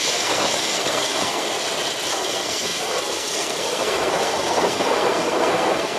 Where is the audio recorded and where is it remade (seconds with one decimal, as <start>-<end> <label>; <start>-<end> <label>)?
0.0-1.5 remade; 1.5-2.1 recorded; 2.1-6.0 remade